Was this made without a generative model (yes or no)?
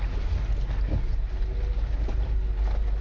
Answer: yes